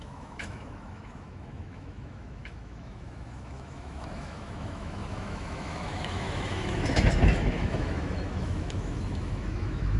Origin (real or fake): fake